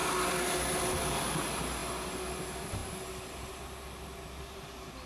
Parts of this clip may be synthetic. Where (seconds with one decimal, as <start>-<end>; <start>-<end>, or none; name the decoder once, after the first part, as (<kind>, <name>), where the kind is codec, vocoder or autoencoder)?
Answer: none